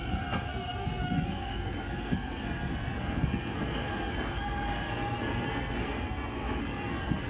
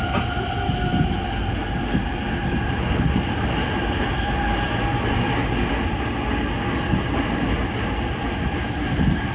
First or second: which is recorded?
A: second